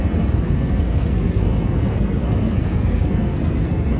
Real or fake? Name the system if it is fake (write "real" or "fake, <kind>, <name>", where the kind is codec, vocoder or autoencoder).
fake, codec, SNAC